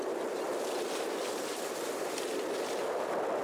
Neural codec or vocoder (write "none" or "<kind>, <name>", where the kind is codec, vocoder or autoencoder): none